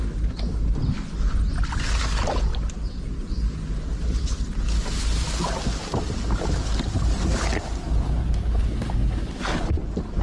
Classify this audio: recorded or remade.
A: recorded